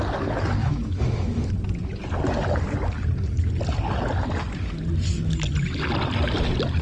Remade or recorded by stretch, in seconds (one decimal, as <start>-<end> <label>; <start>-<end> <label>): 0.0-0.6 recorded; 0.6-1.5 remade; 1.5-6.8 recorded